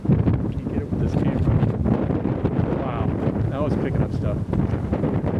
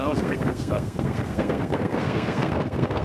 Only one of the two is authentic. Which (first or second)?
first